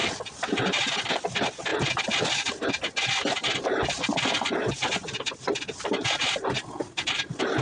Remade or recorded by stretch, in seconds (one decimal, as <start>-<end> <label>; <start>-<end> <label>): 0.0-7.6 recorded